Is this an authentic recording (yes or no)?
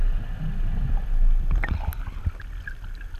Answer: yes